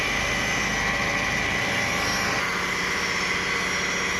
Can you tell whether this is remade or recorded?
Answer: recorded